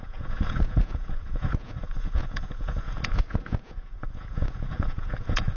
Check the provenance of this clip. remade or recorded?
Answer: remade